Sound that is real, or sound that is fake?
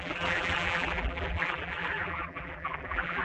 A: fake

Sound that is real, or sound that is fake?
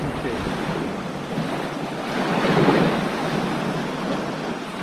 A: real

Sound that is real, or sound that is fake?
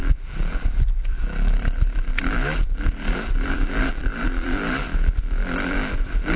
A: fake